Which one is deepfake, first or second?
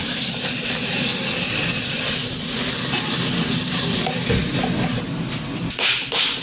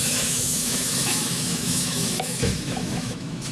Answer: second